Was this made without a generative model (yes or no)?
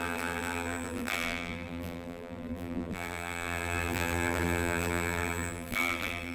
no